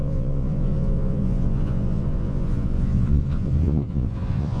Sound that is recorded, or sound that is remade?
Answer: remade